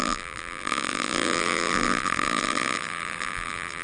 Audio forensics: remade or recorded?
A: remade